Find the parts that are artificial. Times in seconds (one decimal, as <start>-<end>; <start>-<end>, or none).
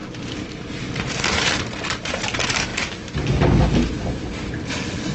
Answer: 0.0-2.7